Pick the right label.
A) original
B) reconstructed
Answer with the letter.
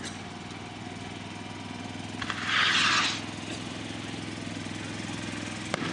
A